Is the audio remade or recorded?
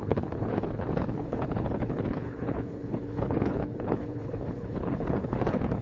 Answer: remade